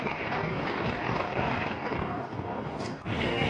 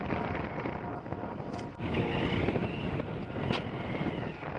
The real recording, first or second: second